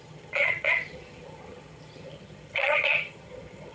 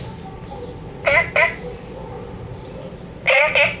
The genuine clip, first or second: second